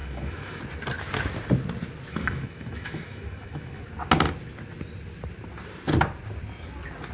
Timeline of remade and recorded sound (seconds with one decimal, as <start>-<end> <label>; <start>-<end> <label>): 0.0-0.6 remade; 0.6-2.1 recorded; 2.1-3.8 remade; 3.8-7.1 recorded